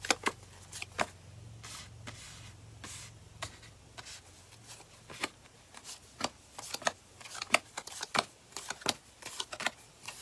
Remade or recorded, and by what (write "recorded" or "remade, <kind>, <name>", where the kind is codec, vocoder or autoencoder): recorded